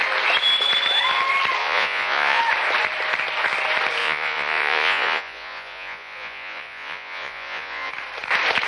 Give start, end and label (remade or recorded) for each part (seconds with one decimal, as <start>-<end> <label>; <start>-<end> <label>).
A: 0.0-1.6 recorded; 1.6-2.4 remade; 2.4-4.0 recorded; 4.0-7.9 remade; 7.9-8.7 recorded